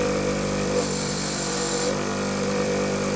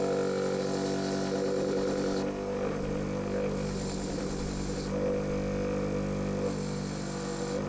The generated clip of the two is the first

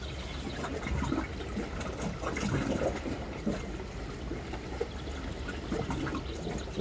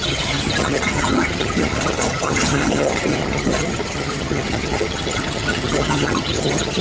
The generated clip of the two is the second